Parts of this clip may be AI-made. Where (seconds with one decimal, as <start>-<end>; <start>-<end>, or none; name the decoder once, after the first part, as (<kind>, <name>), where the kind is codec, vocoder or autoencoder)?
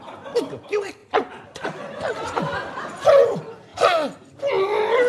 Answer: 0.0-3.7 (vocoder, BigVGAN v2)